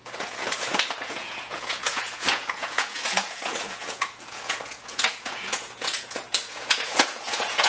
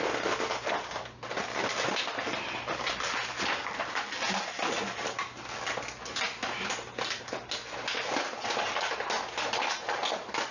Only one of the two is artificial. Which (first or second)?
first